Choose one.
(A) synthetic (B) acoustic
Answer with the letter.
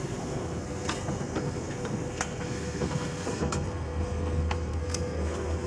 A